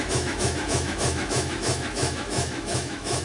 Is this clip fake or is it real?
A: fake